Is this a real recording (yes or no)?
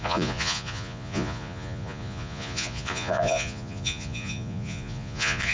no